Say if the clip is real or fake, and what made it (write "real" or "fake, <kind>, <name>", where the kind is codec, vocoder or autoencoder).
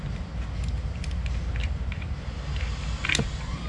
real